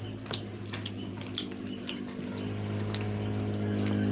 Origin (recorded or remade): recorded